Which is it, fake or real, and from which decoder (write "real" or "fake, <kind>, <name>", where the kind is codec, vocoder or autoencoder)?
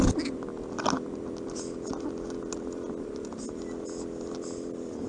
real